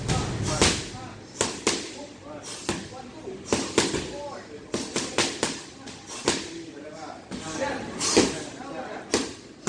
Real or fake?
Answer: real